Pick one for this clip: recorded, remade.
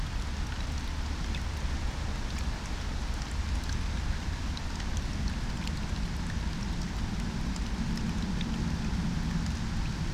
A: recorded